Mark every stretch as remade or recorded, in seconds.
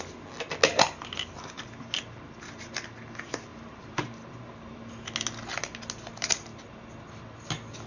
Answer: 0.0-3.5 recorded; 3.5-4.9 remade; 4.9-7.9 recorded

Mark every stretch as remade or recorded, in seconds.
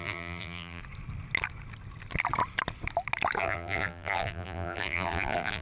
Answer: 0.0-0.8 remade; 0.8-3.4 recorded; 3.4-5.6 remade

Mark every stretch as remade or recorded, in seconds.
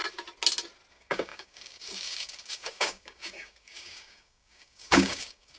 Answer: 0.0-0.9 recorded; 0.9-5.6 remade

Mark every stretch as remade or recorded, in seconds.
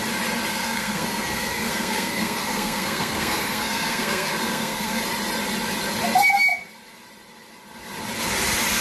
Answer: 0.0-0.5 recorded; 0.5-5.0 remade; 5.0-8.8 recorded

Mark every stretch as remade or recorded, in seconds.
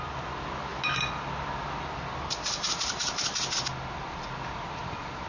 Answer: 0.0-5.3 recorded